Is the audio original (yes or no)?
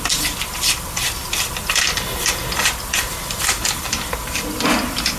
no